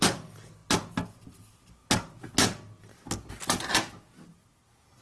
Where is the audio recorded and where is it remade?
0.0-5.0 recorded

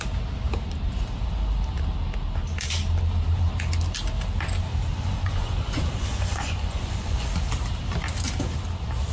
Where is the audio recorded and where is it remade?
0.0-4.9 recorded; 4.9-7.3 remade; 7.3-9.1 recorded

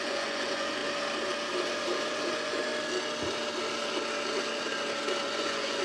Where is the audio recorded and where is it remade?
0.0-0.8 remade; 0.8-2.3 recorded; 2.3-2.7 remade; 2.7-5.2 recorded; 5.2-5.8 remade

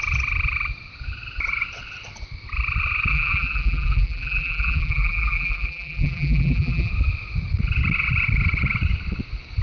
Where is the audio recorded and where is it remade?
0.0-3.1 recorded; 3.1-6.9 remade; 6.9-9.6 recorded

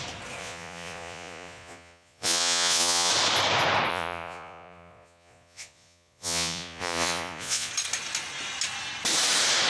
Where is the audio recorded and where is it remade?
0.0-0.4 recorded; 0.4-3.1 remade; 3.1-3.9 recorded; 3.9-7.7 remade; 7.7-9.7 recorded

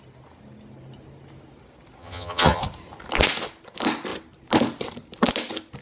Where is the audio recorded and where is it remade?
0.0-2.0 recorded; 2.0-2.6 remade; 2.6-5.8 recorded

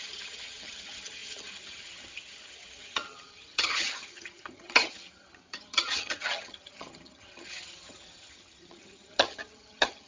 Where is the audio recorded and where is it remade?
0.0-10.1 remade

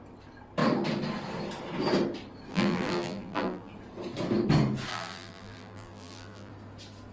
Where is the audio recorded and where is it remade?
0.0-2.5 recorded; 2.5-3.7 remade; 3.7-4.9 recorded; 4.9-6.5 remade; 6.5-7.1 recorded